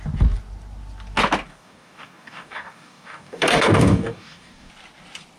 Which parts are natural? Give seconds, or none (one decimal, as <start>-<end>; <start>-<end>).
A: 0.0-1.5; 4.7-5.4